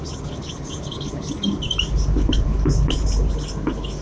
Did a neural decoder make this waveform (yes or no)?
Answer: no